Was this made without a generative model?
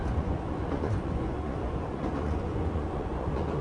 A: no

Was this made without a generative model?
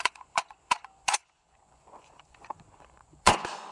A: no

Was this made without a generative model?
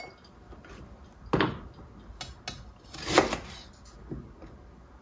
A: yes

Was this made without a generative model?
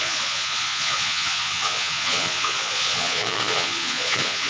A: no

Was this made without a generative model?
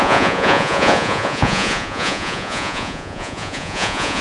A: no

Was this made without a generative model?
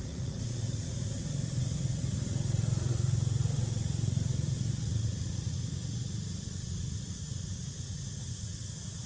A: no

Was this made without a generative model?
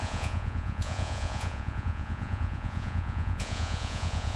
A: no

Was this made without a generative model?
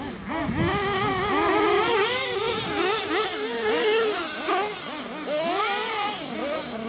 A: yes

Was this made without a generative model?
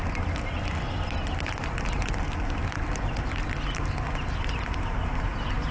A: yes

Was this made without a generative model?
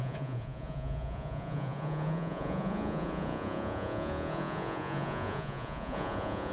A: no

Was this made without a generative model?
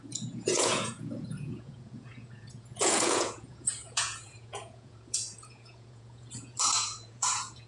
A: no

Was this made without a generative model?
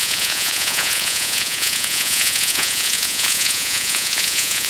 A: no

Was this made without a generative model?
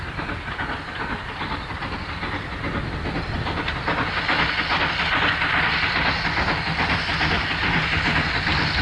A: yes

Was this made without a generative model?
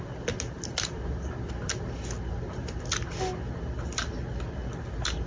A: yes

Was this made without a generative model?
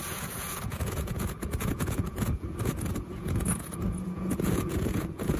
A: no